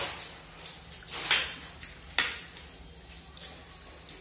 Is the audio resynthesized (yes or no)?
no